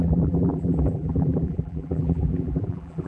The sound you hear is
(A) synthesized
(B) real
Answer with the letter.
A